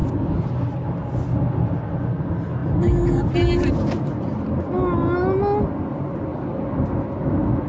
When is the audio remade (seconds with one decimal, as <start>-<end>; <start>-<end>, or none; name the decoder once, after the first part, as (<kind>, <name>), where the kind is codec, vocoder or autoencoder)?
none